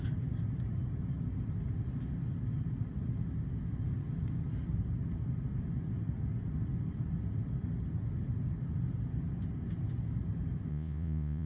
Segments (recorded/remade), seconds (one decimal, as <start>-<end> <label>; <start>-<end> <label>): 0.0-10.7 recorded; 10.7-11.5 remade

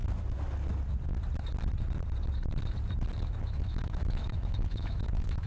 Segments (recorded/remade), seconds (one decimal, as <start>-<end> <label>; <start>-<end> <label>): 0.0-3.2 recorded; 3.2-5.5 remade

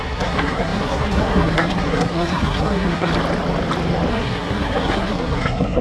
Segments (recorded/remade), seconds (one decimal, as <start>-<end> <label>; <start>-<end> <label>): 0.0-3.1 remade; 3.1-4.1 recorded; 4.1-5.8 remade

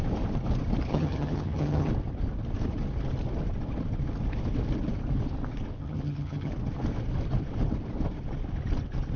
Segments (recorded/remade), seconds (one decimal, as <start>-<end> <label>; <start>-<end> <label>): 0.0-0.9 recorded; 0.9-1.9 remade; 1.9-5.8 recorded; 5.8-6.5 remade; 6.5-9.2 recorded

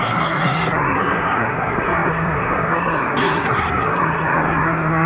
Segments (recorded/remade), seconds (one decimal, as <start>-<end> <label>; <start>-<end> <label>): 0.0-5.1 remade

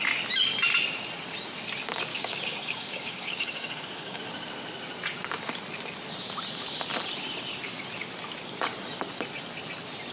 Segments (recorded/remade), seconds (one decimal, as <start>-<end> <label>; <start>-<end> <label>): 0.0-2.1 recorded; 2.1-4.2 remade; 4.2-10.1 recorded

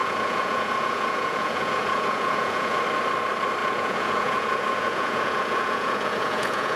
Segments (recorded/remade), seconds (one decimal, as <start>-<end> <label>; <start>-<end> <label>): 0.0-2.8 remade; 2.8-3.6 recorded; 3.6-6.8 remade